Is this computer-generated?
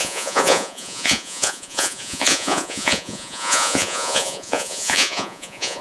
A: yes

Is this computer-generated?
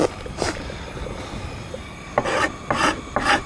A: no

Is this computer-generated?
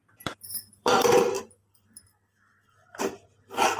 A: yes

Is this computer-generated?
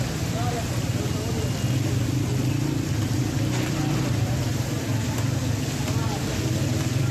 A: no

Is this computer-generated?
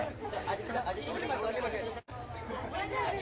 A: no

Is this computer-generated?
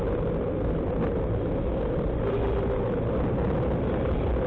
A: no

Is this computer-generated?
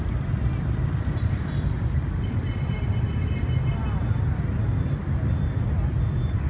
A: no